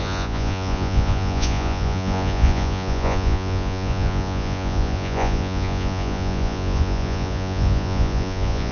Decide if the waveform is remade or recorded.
remade